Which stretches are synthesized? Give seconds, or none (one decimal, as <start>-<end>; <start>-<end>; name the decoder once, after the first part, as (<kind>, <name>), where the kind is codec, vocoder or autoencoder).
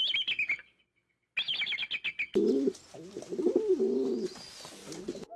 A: none